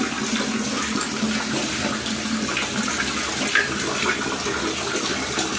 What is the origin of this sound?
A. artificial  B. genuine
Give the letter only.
B